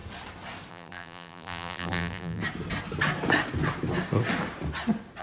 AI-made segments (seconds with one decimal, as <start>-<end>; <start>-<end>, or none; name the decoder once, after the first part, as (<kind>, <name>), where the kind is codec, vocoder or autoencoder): 0.7-2.4 (vocoder, BigVGAN v2)